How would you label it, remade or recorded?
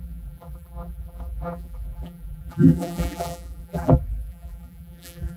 remade